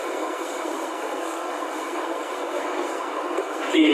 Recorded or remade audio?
remade